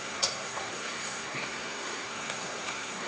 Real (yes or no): no